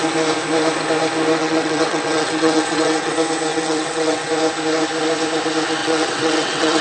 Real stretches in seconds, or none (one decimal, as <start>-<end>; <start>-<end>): 0.0-1.4; 3.1-3.5; 4.3-5.8